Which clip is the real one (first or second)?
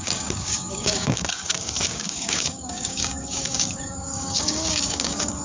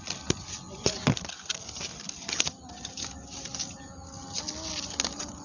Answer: second